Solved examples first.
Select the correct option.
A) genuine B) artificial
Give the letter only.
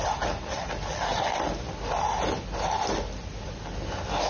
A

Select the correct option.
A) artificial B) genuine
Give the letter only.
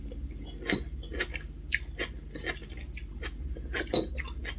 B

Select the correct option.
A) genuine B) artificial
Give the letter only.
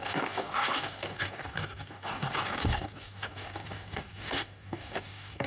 B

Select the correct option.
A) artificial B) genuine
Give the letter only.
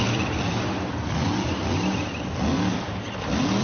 A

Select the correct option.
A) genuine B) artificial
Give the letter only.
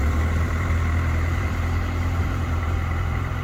B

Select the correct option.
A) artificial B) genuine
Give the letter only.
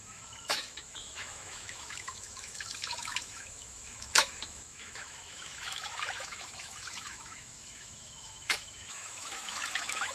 A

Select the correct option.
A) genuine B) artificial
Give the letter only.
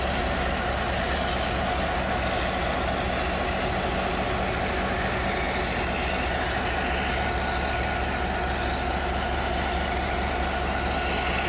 A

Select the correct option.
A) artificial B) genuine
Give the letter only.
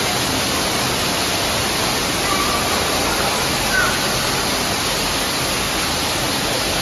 B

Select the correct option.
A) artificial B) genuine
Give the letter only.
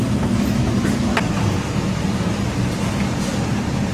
B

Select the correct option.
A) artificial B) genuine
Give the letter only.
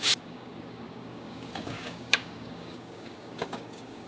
A